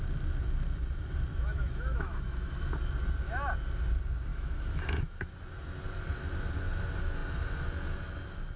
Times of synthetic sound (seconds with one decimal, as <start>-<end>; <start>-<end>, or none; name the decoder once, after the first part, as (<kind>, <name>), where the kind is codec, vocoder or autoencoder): 1.3-2.5 (autoencoder, DAC-VAE); 4.3-5.3